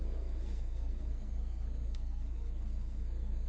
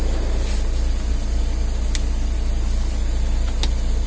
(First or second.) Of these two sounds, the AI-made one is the first